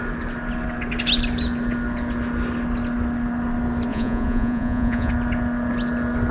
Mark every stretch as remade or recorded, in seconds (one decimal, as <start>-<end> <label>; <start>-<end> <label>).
0.0-3.9 recorded; 3.9-5.1 remade; 5.1-6.3 recorded